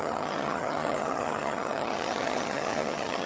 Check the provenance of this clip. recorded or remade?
remade